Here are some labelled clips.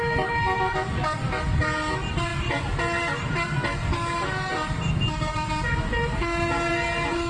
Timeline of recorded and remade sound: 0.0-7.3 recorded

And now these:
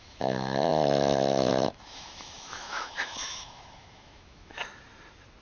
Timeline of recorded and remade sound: 0.0-4.6 remade; 4.6-5.4 recorded

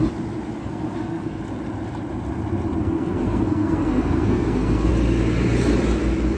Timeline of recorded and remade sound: 0.0-0.6 recorded; 0.6-1.4 remade; 1.4-2.8 recorded; 2.8-4.9 remade; 4.9-6.4 recorded

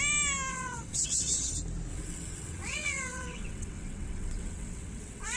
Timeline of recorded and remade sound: 0.0-0.5 recorded; 0.5-1.5 remade; 1.5-1.9 recorded; 1.9-5.4 remade

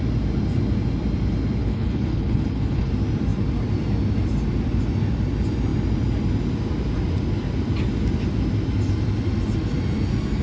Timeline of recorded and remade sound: 0.0-1.6 recorded; 1.6-2.9 remade; 2.9-10.4 recorded

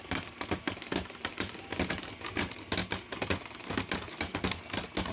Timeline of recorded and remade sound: 0.0-5.1 recorded